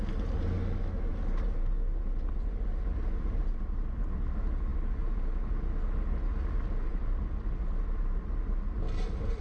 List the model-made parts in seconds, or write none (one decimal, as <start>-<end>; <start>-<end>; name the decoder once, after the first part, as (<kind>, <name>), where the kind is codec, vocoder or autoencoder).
none